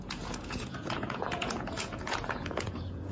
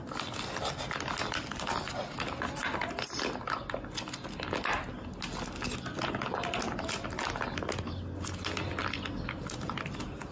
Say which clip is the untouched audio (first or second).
second